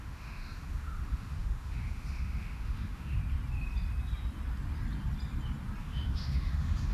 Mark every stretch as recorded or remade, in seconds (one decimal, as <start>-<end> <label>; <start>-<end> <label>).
0.0-3.2 remade; 3.2-5.8 recorded; 5.8-6.9 remade